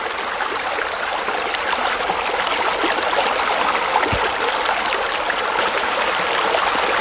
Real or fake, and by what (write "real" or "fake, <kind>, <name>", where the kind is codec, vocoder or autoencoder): real